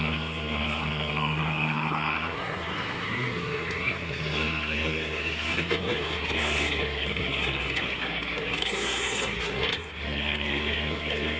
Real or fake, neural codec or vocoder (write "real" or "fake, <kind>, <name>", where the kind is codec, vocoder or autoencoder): fake, codec, SNAC